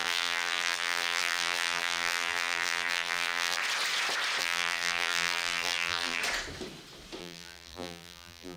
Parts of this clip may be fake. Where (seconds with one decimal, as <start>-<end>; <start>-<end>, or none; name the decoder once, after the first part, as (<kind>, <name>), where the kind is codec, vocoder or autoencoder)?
0.0-3.6 (vocoder, BigVGAN v2); 4.4-6.2; 7.2-8.6